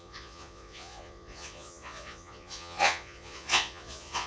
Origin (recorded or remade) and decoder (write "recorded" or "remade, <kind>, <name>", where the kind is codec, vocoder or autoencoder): remade, vocoder, Vocos